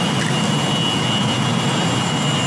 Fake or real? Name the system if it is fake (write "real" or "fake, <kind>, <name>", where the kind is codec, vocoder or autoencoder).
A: real